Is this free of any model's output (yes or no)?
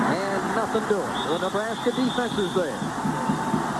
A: yes